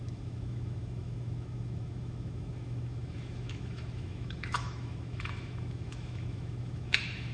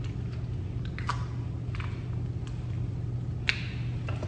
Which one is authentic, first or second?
second